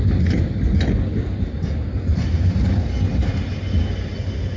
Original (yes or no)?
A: yes